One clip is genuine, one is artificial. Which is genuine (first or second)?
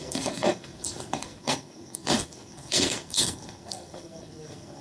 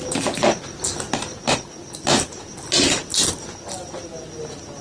second